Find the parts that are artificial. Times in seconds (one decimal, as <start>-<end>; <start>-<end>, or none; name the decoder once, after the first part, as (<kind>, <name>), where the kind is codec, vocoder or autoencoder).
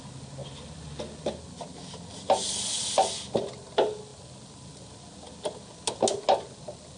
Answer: none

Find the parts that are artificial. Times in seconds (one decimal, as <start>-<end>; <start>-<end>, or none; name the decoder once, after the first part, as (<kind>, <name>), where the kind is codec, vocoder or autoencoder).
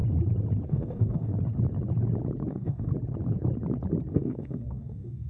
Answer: 0.7-1.3 (codec, DAC); 2.5-2.9; 4.1-5.3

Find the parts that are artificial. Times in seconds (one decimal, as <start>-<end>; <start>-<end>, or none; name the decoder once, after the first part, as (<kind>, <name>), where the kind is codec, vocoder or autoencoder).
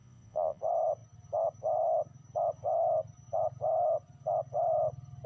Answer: 0.0-0.6 (vocoder, Vocos)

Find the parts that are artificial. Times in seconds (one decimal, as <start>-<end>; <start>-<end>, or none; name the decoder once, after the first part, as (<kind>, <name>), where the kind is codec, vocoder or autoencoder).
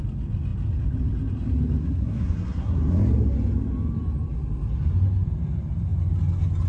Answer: 1.8-2.8 (codec, SNAC)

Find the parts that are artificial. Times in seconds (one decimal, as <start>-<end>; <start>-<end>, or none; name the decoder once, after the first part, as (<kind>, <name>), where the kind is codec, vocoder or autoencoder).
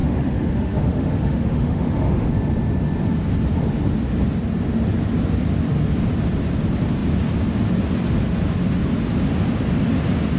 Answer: 0.0-2.3 (autoencoder, DAC-VAE)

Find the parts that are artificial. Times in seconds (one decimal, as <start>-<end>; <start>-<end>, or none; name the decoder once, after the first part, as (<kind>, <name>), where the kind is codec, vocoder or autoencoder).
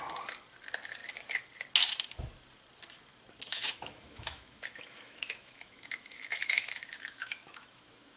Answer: 3.5-8.2 (autoencoder, DAC-VAE)